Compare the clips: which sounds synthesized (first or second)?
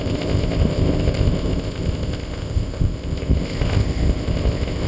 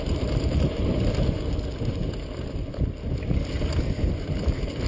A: first